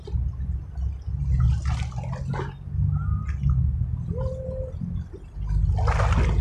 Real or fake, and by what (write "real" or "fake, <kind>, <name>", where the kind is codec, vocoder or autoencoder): real